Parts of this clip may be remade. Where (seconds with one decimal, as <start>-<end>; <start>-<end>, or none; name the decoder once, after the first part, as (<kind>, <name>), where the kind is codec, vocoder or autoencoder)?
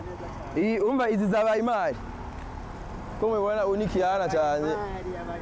none